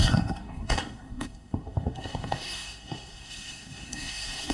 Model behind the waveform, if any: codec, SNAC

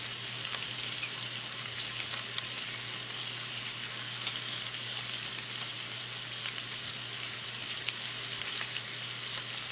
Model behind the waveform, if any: none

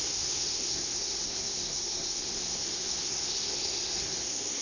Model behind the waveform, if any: codec, SNAC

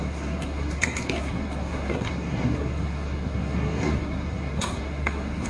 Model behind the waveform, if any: codec, SNAC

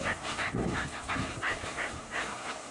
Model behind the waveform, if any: codec, SNAC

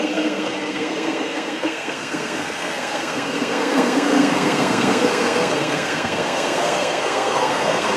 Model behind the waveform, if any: codec, SNAC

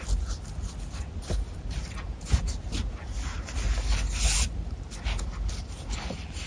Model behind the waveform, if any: none